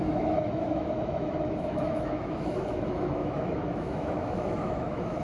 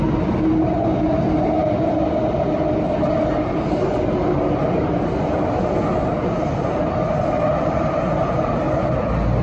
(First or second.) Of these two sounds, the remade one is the first